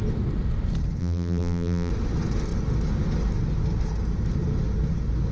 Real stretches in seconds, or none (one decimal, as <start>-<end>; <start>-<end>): 0.0-1.0; 1.9-5.3